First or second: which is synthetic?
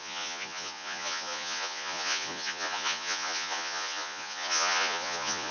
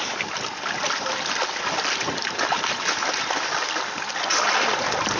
first